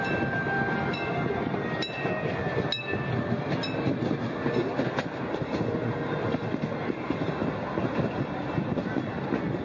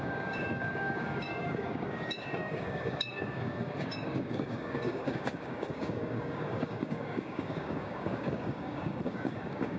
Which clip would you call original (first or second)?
first